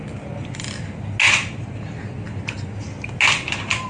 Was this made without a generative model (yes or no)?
yes